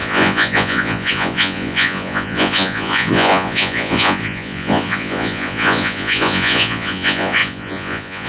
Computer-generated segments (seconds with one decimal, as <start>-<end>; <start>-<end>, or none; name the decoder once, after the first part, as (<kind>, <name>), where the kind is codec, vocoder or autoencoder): 0.0-8.3 (vocoder, Vocos)